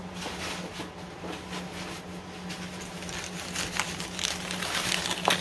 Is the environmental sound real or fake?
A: real